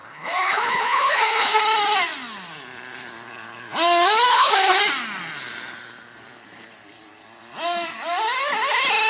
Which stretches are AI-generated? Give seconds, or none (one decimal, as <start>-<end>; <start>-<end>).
0.0-1.6; 4.3-4.8